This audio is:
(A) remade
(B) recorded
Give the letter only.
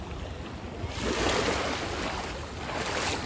B